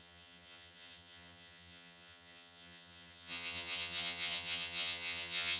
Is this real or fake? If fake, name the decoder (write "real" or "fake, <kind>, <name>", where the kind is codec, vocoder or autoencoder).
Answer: fake, vocoder, HiFi-GAN